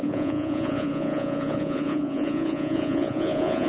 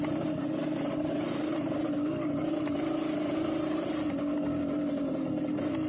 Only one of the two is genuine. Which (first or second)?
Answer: second